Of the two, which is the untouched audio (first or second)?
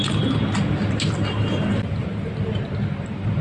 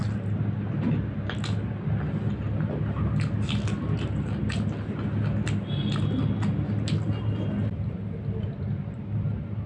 second